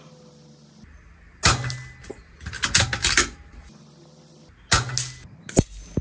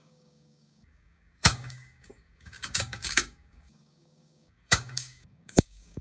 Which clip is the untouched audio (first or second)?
first